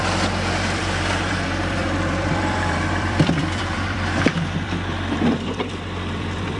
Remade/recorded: remade